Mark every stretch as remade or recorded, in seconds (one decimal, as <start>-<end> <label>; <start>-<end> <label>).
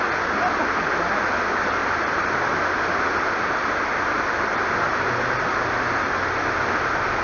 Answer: 0.0-1.8 recorded; 1.8-3.0 remade; 3.0-7.2 recorded